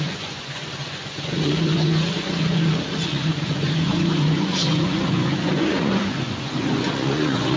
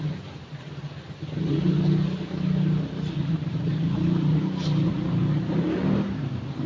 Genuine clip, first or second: second